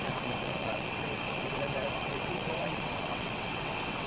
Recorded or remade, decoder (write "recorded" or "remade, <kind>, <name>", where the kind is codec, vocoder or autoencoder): remade, vocoder, WaveNeXt